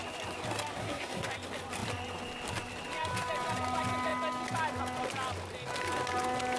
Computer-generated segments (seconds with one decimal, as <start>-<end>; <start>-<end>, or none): 0.8-1.3